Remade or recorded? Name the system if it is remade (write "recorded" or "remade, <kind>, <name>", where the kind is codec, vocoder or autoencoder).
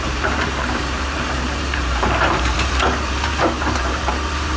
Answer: remade, vocoder, BigVGAN v2